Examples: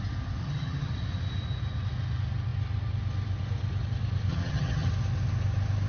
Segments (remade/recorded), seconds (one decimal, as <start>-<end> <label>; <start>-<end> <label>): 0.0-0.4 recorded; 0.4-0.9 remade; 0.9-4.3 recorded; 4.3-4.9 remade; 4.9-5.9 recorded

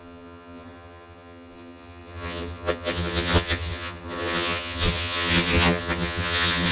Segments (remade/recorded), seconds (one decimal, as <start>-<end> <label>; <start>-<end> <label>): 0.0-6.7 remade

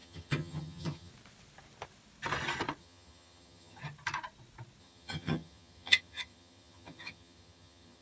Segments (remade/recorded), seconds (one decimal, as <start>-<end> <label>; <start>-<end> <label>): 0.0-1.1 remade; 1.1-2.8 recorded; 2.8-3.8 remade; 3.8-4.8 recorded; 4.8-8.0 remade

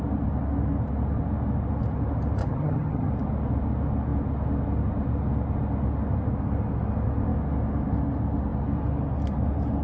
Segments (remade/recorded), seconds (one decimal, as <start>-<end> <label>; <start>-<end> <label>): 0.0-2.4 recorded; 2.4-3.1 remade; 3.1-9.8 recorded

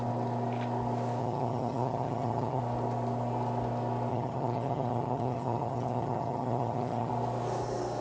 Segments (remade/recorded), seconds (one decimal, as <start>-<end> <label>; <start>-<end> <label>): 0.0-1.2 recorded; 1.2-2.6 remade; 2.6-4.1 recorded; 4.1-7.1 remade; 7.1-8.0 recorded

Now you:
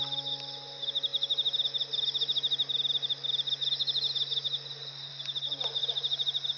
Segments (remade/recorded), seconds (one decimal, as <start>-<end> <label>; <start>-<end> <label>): 0.0-6.6 recorded